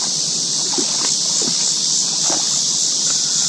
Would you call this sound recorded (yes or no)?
yes